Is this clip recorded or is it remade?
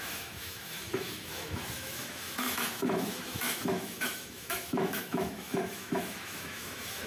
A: remade